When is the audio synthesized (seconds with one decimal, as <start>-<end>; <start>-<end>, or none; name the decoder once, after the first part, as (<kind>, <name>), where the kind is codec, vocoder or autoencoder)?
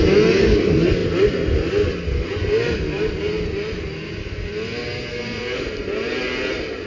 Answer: none